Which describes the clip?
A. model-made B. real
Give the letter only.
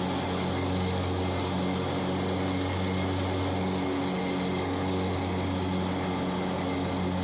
B